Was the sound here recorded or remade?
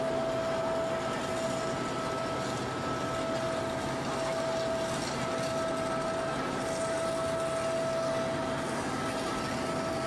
recorded